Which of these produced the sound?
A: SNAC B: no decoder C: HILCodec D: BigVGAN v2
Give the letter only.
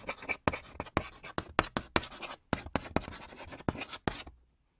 B